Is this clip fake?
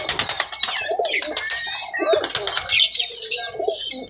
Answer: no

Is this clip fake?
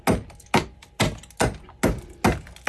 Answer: no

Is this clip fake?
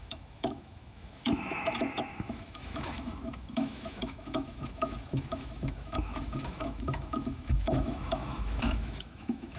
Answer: yes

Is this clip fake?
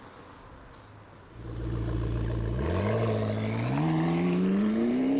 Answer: no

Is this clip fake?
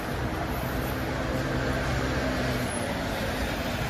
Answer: no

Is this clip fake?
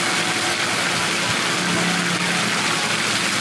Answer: no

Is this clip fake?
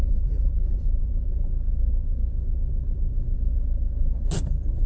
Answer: no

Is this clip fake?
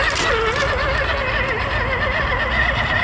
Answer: no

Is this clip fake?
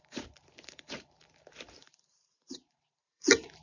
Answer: yes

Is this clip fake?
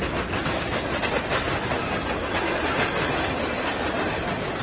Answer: no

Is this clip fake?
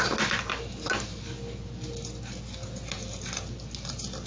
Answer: no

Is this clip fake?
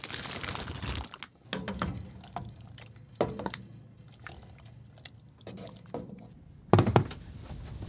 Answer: no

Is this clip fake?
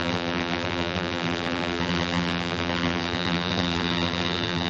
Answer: yes